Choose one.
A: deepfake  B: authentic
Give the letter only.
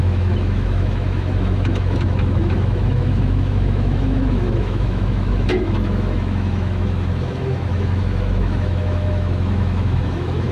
A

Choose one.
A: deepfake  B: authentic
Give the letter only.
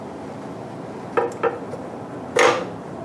B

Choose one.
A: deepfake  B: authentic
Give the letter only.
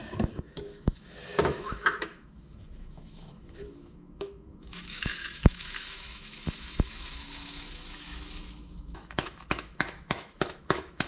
A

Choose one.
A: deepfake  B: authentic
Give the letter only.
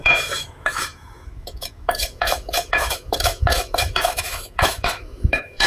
A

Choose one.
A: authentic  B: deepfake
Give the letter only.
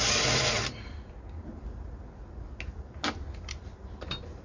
A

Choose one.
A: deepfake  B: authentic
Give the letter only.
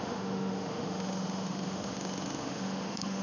A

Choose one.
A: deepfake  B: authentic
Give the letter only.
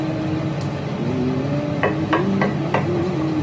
B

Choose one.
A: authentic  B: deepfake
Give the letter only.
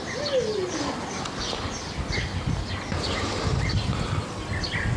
A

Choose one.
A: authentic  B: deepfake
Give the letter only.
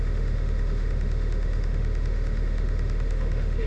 B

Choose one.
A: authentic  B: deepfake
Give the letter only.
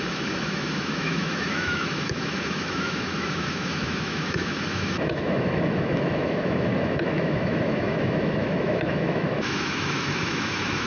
B